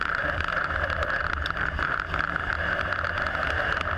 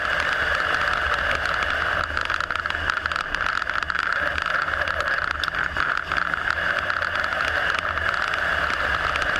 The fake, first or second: first